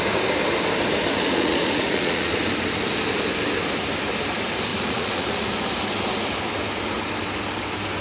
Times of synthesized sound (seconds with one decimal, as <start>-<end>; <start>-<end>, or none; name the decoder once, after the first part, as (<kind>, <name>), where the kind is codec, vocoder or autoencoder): 1.1-2.3 (vocoder, Vocos); 4.7-5.5